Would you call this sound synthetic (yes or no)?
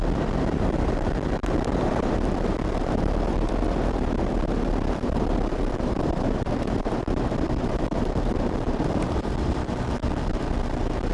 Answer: yes